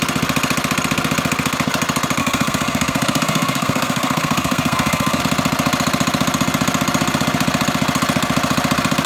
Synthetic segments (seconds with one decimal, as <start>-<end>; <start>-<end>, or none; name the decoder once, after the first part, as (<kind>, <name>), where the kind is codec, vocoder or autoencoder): 2.2-5.2 (codec, SNAC)